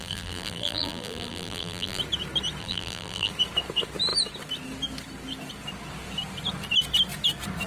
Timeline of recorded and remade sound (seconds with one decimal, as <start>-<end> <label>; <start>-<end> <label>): 0.0-2.0 remade; 2.0-2.6 recorded; 2.6-3.3 remade; 3.3-7.7 recorded